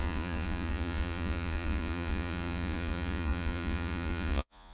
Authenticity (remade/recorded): remade